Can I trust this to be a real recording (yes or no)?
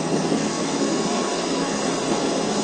no